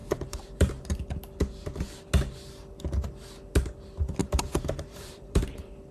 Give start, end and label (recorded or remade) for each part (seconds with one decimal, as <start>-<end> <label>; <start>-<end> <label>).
0.0-1.1 remade; 1.1-4.2 recorded; 4.2-5.4 remade; 5.4-5.9 recorded